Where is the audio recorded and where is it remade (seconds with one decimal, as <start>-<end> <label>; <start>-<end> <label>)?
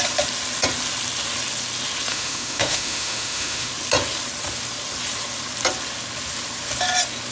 0.0-2.1 recorded; 2.1-3.7 remade; 3.7-7.3 recorded